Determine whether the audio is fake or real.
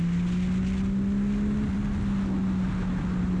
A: real